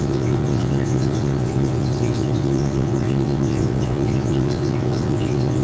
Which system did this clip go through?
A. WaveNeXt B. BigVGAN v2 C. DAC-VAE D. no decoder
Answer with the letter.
A